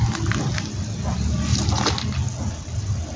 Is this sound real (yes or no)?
yes